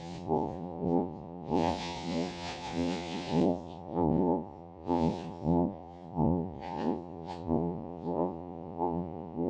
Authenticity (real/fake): fake